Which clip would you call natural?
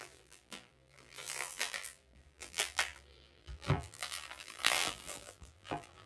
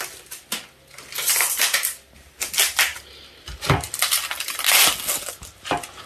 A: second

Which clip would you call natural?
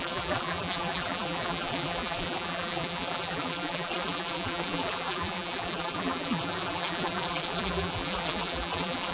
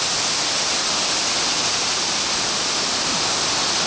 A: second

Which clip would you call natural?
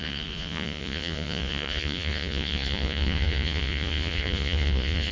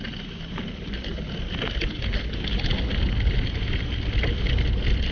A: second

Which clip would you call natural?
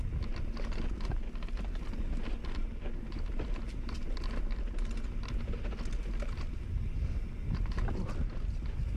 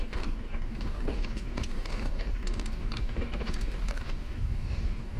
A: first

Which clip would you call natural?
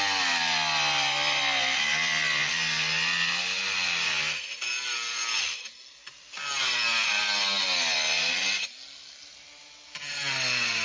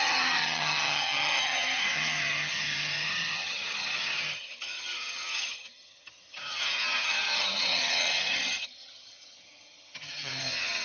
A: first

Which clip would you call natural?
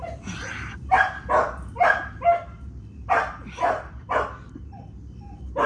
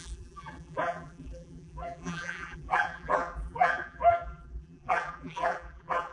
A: first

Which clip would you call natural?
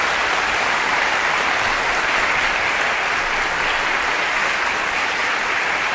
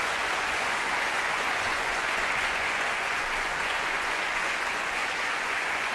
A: first